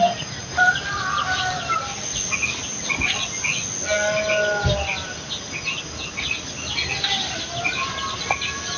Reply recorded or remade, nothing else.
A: recorded